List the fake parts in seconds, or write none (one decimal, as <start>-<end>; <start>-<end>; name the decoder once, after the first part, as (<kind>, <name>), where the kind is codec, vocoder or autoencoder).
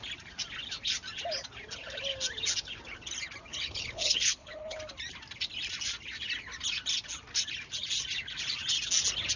3.5-4.8 (codec, HILCodec)